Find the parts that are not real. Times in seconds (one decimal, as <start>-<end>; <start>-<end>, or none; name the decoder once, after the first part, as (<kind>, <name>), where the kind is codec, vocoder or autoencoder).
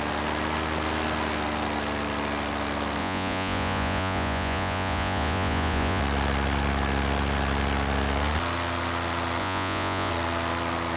3.0-6.0 (vocoder, Vocos); 9.4-10.1